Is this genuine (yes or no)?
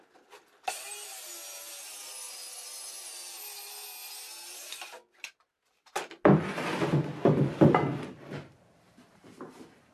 yes